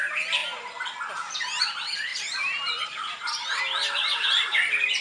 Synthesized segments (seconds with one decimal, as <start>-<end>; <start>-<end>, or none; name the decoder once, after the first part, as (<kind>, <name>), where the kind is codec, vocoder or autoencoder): 2.1-3.6 (vocoder, BigVGAN v2)